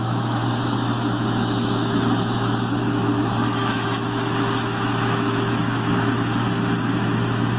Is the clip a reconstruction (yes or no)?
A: yes